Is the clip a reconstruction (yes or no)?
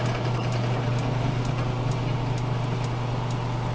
no